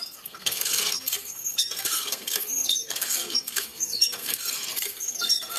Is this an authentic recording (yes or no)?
no